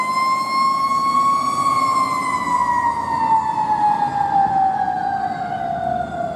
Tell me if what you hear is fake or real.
real